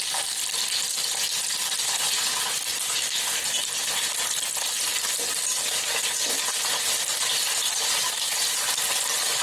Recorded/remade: recorded